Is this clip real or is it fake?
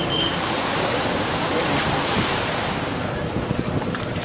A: fake